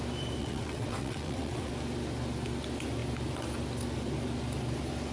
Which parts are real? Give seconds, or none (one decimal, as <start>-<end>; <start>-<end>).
0.0-0.4; 1.7-5.1